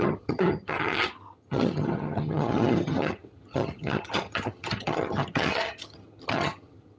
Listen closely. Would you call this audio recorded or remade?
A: remade